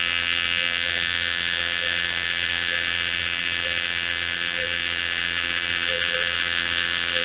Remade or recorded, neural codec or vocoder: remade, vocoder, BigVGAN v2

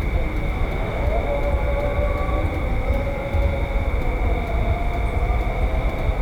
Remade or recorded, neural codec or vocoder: recorded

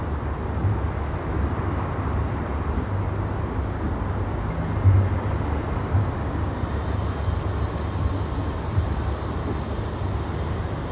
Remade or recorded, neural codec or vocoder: recorded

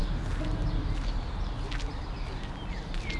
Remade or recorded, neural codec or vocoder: recorded